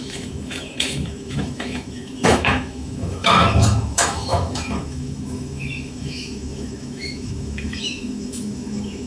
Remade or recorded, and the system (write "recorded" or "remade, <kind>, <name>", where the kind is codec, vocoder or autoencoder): remade, autoencoder, DAC-VAE